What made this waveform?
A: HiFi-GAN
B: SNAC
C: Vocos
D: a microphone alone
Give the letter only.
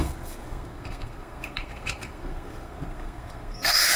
B